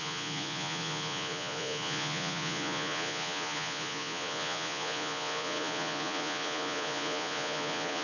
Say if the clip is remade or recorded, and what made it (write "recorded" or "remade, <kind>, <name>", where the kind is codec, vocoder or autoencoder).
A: remade, vocoder, Vocos